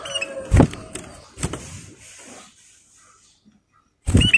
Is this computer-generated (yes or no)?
no